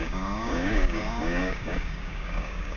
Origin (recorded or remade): remade